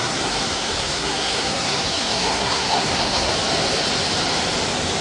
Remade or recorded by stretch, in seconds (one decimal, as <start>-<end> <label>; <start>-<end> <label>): 0.0-3.3 remade; 3.3-5.0 recorded